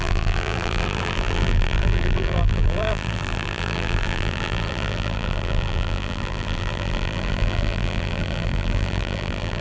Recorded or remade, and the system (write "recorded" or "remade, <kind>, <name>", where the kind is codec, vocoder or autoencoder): remade, vocoder, BigVGAN v2